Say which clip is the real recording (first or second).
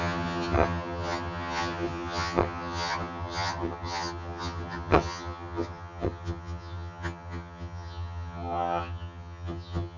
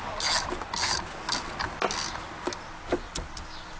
second